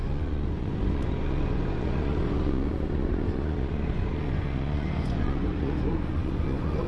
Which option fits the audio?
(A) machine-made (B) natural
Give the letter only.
A